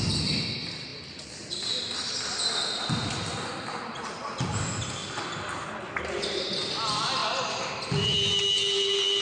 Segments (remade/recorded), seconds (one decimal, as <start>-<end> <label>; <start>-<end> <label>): 0.0-9.2 recorded